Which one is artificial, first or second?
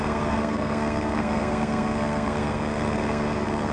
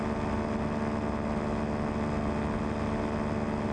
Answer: first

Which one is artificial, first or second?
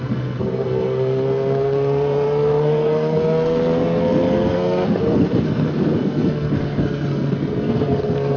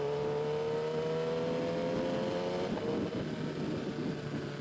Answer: first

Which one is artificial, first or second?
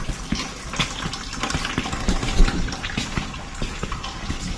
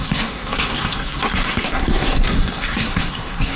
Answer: second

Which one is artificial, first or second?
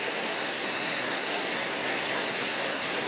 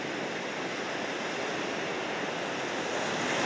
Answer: first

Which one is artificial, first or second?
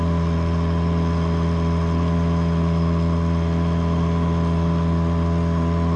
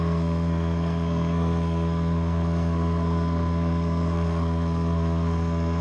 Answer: second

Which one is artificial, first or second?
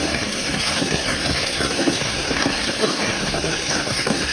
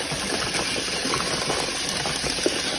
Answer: first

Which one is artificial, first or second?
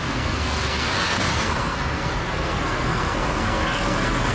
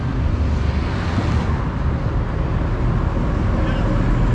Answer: first